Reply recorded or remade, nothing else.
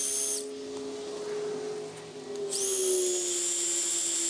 recorded